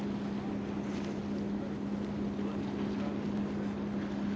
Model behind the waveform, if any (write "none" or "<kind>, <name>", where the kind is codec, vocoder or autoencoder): none